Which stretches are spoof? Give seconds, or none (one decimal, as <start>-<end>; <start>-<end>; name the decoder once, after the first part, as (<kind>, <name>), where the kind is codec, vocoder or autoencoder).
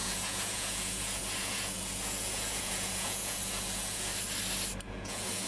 0.0-4.1 (vocoder, Vocos); 4.9-5.5